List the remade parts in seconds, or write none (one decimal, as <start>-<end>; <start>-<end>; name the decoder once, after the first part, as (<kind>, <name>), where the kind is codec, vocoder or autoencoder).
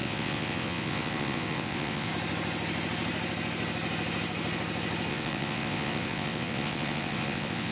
0.0-2.1 (vocoder, WaveNeXt); 5.1-7.7